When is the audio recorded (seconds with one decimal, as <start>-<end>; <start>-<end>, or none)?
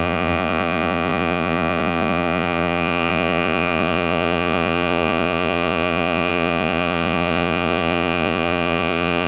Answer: none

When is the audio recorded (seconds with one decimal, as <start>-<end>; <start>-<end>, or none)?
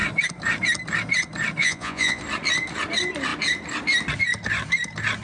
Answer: 0.0-1.6; 2.2-5.2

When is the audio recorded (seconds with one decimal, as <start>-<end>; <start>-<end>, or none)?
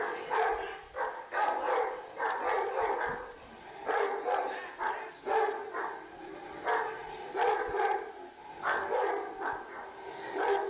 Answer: 0.0-10.7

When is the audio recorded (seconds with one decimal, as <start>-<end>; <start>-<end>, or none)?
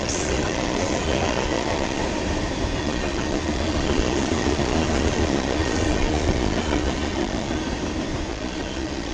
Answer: 2.0-2.8; 7.6-8.3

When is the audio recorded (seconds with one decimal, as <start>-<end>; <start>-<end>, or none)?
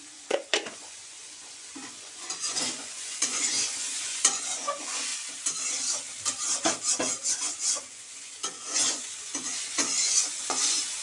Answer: 5.1-7.3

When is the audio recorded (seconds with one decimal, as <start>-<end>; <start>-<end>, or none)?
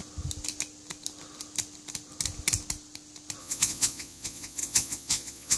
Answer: 0.0-3.4